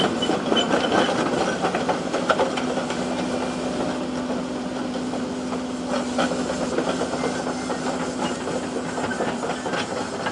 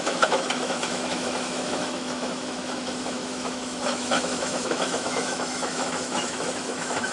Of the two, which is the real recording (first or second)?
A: first